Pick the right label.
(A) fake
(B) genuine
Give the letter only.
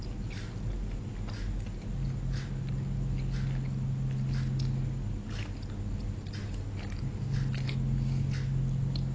B